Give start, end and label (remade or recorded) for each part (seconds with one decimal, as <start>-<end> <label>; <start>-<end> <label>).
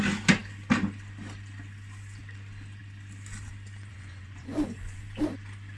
0.0-3.9 recorded; 3.9-5.0 remade; 5.0-5.8 recorded